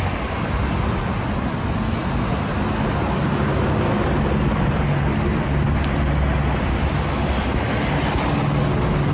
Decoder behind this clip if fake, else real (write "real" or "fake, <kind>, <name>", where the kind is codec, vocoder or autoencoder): real